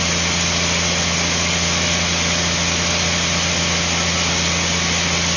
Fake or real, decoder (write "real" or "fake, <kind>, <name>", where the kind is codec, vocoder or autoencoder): real